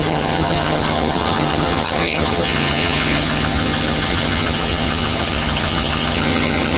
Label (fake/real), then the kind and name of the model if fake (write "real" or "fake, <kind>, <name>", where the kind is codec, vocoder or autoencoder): fake, vocoder, HiFi-GAN